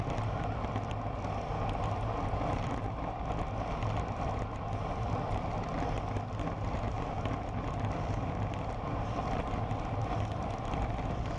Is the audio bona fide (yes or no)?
yes